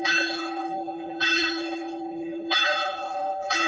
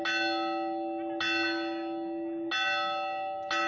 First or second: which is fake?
first